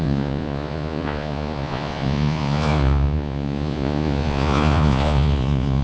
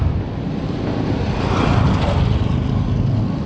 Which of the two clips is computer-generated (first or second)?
first